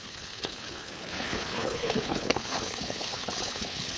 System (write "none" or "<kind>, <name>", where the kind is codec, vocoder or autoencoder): codec, HILCodec